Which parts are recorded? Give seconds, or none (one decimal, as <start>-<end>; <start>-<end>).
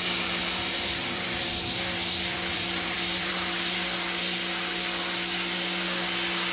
0.0-0.7; 1.5-2.5; 3.3-6.5